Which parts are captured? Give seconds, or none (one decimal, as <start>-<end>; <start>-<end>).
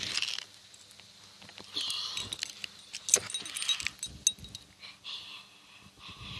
0.0-6.4